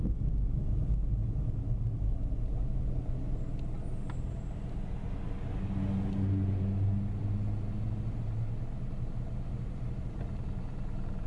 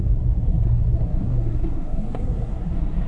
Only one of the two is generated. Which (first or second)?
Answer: second